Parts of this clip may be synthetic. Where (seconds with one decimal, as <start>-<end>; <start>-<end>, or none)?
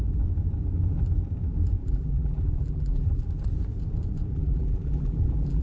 1.8-3.2; 4.3-5.6